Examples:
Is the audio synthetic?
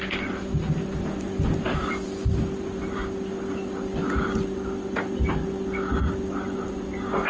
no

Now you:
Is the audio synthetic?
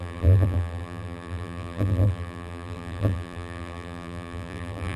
yes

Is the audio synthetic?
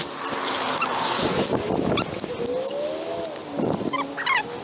no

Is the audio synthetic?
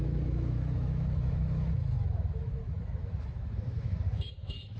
yes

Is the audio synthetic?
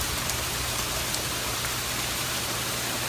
yes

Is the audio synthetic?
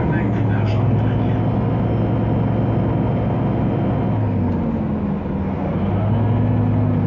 no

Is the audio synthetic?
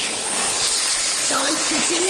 yes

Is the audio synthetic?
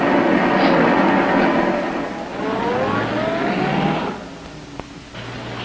no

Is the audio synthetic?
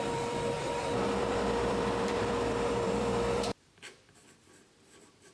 yes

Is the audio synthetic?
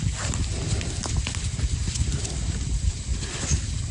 yes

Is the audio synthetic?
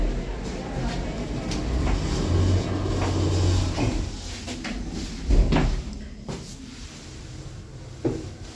no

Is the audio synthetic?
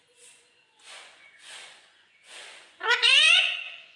yes